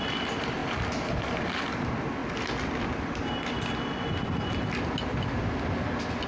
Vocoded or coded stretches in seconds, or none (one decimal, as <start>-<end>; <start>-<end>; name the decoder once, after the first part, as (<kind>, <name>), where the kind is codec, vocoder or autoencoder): none